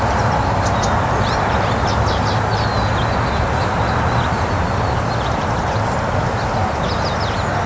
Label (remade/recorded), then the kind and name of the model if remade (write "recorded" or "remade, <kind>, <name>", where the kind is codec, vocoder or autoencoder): recorded